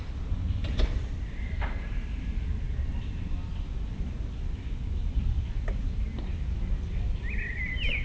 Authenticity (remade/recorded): recorded